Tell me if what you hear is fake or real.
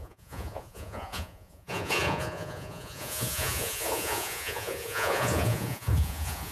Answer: fake